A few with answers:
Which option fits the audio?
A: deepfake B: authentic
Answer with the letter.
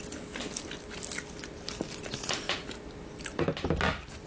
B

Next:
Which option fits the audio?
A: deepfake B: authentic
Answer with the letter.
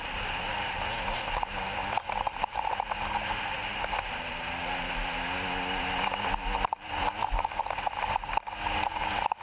B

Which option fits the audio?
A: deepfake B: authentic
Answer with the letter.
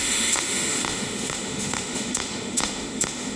A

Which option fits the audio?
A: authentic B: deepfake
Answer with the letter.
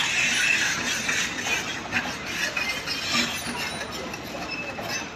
A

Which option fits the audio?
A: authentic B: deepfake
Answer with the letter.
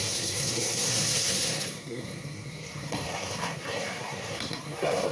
B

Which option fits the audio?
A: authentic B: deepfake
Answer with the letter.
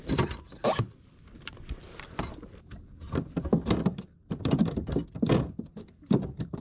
A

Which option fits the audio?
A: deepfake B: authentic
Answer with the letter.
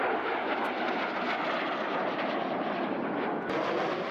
B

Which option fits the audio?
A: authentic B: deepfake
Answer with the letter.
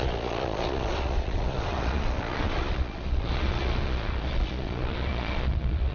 B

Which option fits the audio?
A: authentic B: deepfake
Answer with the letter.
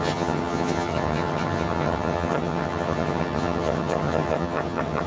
B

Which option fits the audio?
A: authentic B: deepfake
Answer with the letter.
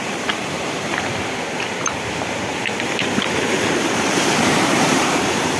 B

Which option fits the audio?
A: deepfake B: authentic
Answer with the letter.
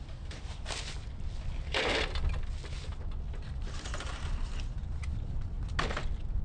B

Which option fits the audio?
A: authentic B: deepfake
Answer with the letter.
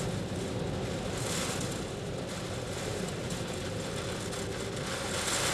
A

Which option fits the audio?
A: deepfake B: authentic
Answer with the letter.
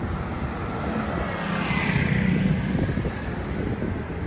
B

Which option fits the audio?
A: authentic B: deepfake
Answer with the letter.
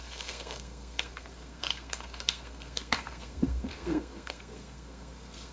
B